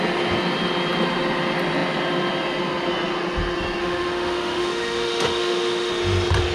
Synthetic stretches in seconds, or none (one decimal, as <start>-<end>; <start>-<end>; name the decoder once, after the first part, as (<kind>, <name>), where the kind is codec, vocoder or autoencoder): 3.8-5.9 (autoencoder, DAC-VAE)